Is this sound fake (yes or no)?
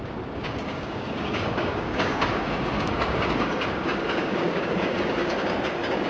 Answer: yes